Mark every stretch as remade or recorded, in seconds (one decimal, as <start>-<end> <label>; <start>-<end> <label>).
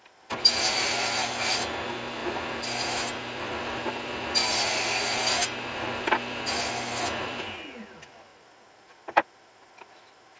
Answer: 0.0-10.4 recorded